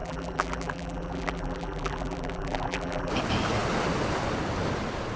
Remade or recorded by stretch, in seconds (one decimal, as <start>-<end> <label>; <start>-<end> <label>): 0.0-3.1 remade; 3.1-5.2 recorded

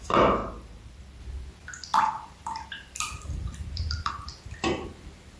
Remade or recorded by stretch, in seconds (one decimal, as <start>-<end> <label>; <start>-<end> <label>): 0.0-0.4 recorded; 0.4-1.2 remade; 1.2-1.9 recorded; 1.9-4.1 remade; 4.1-5.4 recorded